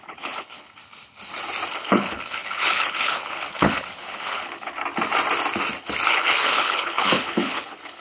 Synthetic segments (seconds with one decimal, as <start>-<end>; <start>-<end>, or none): 0.0-0.8; 1.7-4.8; 6.1-8.0